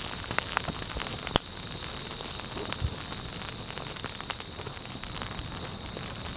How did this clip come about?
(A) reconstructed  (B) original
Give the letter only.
B